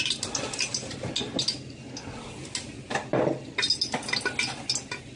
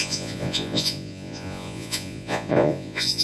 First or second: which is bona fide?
first